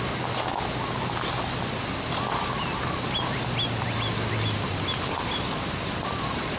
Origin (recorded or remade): recorded